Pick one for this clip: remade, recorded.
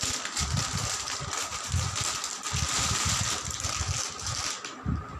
recorded